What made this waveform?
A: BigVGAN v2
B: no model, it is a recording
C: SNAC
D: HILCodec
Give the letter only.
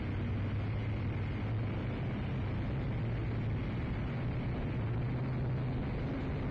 B